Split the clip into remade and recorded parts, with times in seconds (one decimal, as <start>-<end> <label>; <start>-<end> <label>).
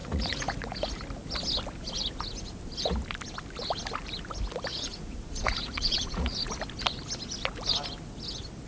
0.0-0.9 remade; 0.9-4.7 recorded; 4.7-6.5 remade; 6.5-8.7 recorded